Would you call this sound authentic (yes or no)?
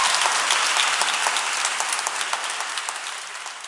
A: yes